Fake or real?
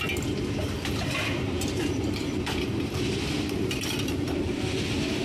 fake